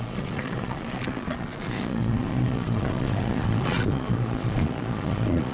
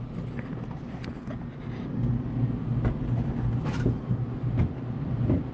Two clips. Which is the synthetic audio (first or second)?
first